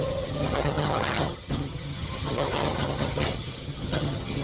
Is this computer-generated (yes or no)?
yes